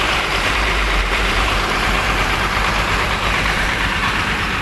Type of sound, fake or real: fake